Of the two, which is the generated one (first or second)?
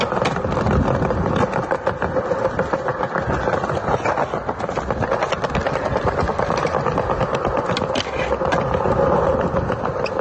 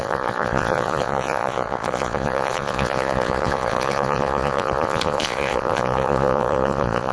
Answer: second